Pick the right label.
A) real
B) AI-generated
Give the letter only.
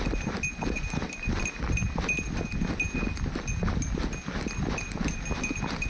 A